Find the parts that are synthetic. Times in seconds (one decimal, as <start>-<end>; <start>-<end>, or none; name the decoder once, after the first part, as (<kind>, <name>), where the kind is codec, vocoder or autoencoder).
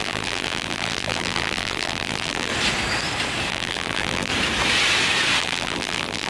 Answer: 0.0-2.5 (vocoder, BigVGAN v2); 3.5-4.3; 5.4-6.3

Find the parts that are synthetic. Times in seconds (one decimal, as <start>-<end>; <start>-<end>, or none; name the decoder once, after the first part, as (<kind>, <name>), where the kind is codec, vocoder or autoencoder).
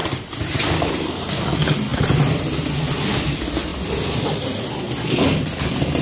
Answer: 0.0-0.9 (vocoder, BigVGAN v2); 1.9-2.6; 3.7-4.3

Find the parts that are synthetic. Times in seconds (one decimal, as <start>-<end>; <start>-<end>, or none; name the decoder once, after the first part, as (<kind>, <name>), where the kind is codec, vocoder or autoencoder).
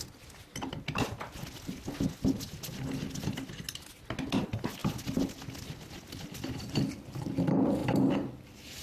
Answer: none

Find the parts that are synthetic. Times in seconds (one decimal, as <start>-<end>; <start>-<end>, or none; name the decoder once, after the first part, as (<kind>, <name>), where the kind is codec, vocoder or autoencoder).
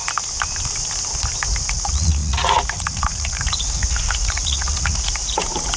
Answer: 1.7-5.8 (vocoder, Vocos)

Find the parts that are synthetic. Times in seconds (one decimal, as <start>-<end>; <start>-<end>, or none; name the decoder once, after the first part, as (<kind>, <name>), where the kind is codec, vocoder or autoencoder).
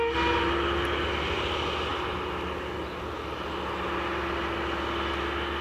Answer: none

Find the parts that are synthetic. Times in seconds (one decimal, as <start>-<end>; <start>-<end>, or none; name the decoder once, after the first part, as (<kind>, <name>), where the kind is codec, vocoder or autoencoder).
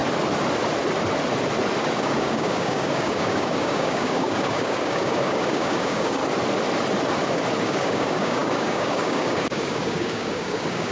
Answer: 2.0-6.2 (codec, DAC); 7.6-10.9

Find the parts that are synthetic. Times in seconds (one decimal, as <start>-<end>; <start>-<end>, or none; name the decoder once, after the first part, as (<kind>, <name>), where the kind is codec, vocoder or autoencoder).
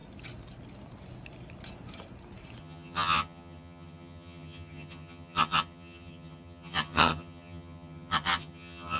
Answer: 2.6-9.0 (vocoder, HiFi-GAN)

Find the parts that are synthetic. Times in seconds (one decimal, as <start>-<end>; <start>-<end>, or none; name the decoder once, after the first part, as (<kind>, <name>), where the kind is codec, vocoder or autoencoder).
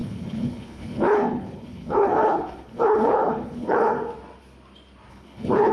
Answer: 0.0-3.9 (codec, HILCodec); 5.1-5.7